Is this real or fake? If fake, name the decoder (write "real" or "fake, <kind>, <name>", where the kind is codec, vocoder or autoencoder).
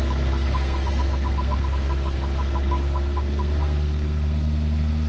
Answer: fake, codec, SNAC